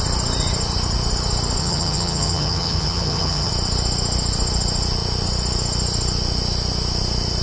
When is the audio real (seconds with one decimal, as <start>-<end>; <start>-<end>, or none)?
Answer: 0.0-1.6; 3.5-7.4